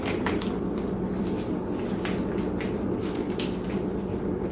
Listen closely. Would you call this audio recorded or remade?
recorded